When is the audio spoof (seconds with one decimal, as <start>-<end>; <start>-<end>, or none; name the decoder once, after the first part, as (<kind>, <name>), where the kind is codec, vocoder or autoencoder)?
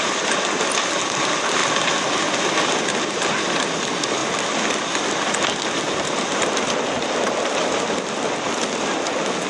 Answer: none